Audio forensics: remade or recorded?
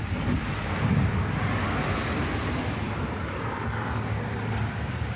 recorded